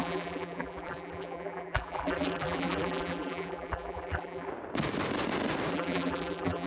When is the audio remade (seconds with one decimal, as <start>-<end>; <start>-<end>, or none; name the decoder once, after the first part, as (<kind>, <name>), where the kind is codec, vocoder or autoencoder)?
0.0-4.5 (vocoder, BigVGAN v2); 5.7-6.7